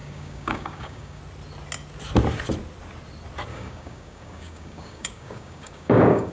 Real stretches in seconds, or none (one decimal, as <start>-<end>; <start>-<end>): 1.2-3.5